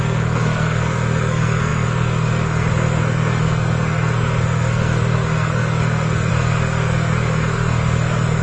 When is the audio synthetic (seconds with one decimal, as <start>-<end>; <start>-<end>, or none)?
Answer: 0.0-8.4